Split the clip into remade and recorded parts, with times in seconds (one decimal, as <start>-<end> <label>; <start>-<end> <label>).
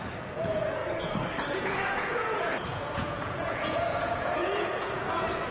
0.0-0.8 remade; 0.8-1.5 recorded; 1.5-5.5 remade